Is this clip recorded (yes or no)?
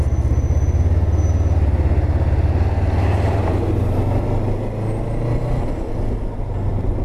yes